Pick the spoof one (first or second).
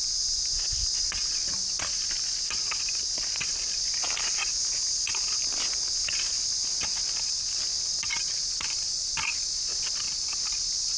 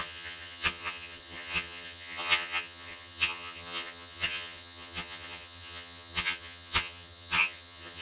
second